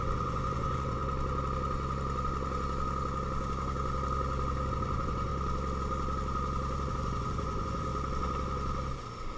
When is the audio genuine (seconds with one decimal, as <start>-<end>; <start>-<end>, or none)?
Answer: 1.0-4.7; 5.3-6.9; 7.9-9.4